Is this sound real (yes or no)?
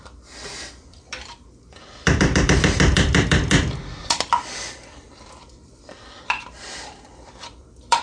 no